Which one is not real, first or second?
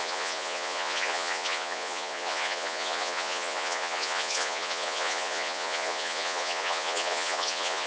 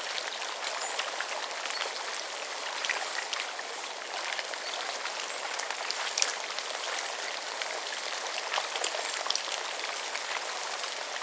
first